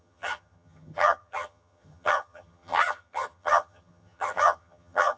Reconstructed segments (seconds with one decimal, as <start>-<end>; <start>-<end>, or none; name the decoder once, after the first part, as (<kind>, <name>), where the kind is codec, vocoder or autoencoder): 0.0-5.2 (vocoder, HiFi-GAN)